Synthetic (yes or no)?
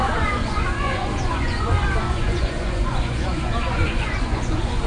yes